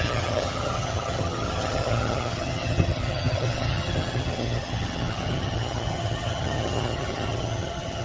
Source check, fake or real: fake